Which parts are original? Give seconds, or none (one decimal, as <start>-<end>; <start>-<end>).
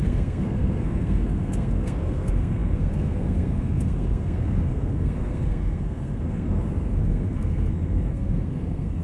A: none